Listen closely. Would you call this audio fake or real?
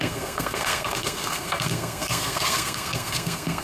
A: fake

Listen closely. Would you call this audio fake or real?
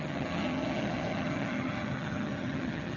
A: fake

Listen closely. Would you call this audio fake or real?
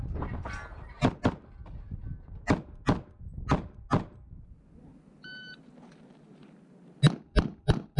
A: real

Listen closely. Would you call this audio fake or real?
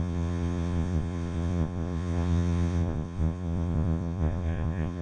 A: fake